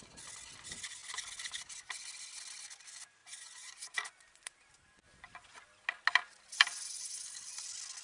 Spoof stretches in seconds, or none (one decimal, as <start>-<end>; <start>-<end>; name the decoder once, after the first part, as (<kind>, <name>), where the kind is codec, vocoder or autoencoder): 3.2-4.5 (vocoder, Vocos)